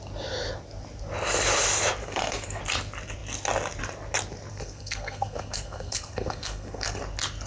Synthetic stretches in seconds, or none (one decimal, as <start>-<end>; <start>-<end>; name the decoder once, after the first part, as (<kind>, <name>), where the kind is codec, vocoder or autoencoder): 2.0-2.6 (codec, SNAC); 4.5-7.0